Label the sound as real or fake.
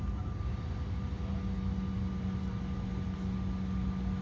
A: real